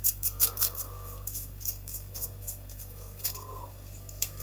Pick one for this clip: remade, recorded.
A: remade